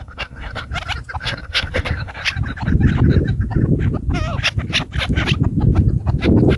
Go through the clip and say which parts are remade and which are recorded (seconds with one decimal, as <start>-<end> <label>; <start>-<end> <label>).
0.0-0.7 remade; 0.7-1.2 recorded; 1.2-2.2 remade; 2.2-6.6 recorded